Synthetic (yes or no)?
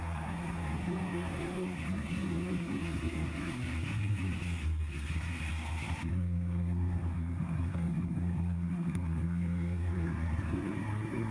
yes